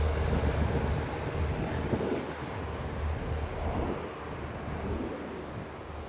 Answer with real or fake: real